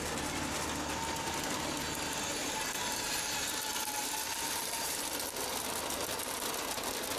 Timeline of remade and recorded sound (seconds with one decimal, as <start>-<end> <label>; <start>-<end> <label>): 0.0-2.4 recorded; 2.4-5.4 remade; 5.4-7.2 recorded